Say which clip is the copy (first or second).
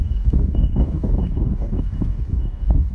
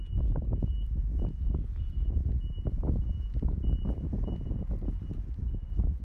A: first